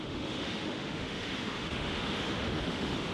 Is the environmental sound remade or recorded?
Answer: remade